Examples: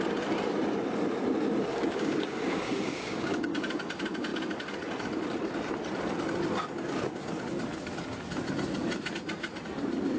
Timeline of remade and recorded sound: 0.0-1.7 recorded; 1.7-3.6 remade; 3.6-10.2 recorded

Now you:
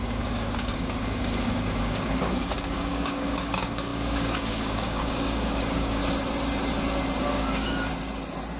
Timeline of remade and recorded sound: 0.0-6.0 remade; 6.0-7.2 recorded; 7.2-7.9 remade; 7.9-8.6 recorded

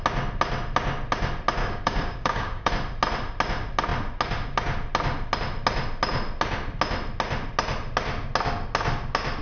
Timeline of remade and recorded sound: 0.0-1.6 recorded; 1.6-2.7 remade; 2.7-9.4 recorded

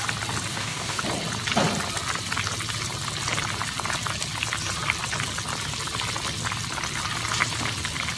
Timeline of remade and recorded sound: 0.0-0.5 recorded; 0.5-1.0 remade; 1.0-8.2 recorded

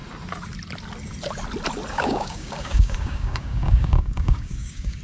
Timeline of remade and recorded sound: 0.0-1.9 recorded; 1.9-5.0 remade

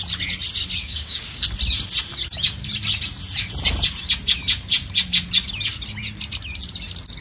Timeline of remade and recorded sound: 0.0-0.8 recorded; 0.8-1.4 remade; 1.4-7.2 recorded

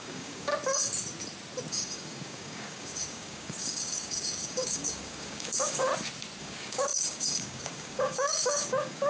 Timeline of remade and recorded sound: 0.0-0.5 remade; 0.5-1.7 recorded; 1.7-5.9 remade; 5.9-6.4 recorded; 6.4-9.1 remade

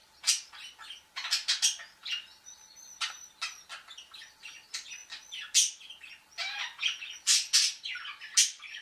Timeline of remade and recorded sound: 0.0-8.8 recorded